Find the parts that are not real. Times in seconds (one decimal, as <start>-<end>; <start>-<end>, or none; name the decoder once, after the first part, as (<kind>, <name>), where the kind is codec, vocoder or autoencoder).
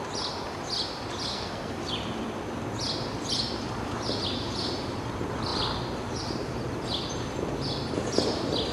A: 1.3-1.8 (codec, SNAC)